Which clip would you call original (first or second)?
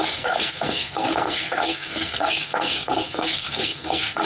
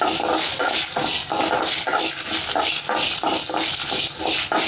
second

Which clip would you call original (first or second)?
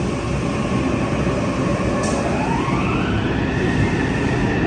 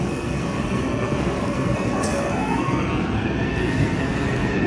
first